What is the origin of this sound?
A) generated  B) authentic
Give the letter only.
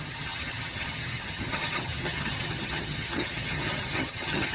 A